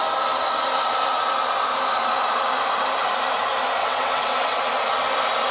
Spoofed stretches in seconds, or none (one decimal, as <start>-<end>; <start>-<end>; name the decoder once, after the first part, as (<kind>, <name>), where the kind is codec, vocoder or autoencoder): 3.8-4.6 (vocoder, WaveNeXt)

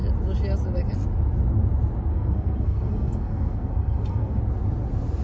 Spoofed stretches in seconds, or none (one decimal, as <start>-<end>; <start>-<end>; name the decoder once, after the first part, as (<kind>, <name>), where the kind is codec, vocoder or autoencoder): 2.1-4.4 (codec, SNAC)

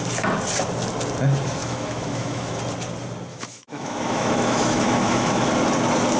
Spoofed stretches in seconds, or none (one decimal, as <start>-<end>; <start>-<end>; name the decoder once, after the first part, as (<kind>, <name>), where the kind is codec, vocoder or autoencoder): 1.6-2.6 (autoencoder, DAC-VAE); 3.3-5.5

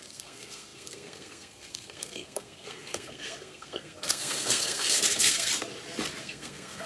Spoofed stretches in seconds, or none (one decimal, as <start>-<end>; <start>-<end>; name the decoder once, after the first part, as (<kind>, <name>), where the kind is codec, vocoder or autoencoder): 0.0-5.5 (codec, SNAC); 6.2-6.9